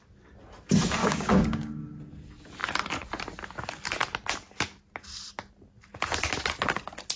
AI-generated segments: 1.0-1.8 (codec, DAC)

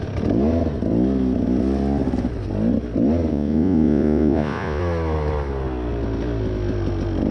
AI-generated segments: 3.3-4.8 (vocoder, Vocos)

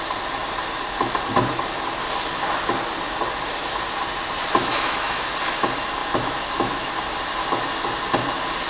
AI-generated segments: 4.6-5.3 (autoencoder, DAC-VAE); 6.0-6.9

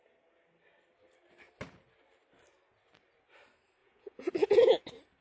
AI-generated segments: 3.8-4.8 (vocoder, Vocos)

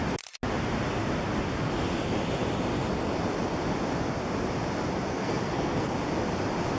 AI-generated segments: 5.1-5.9 (codec, SNAC)